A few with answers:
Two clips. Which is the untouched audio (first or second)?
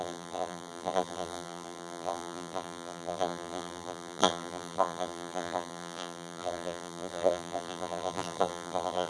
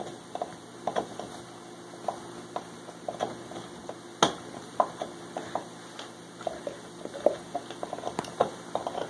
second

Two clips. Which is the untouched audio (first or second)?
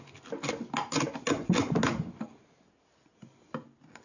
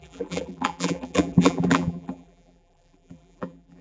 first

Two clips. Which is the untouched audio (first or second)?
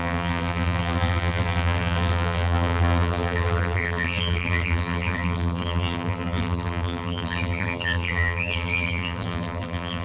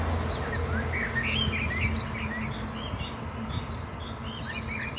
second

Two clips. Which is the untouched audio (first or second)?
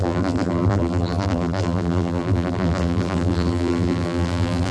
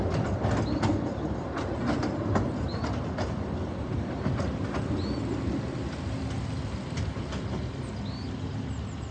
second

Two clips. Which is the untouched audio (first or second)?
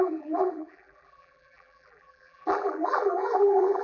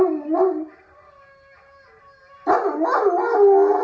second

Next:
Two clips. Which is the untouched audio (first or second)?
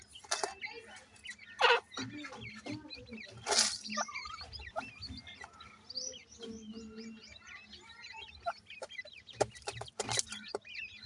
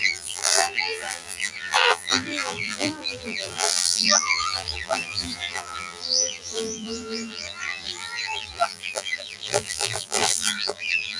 first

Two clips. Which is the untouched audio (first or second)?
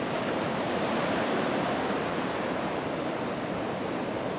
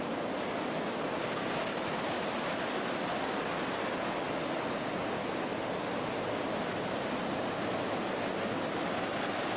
second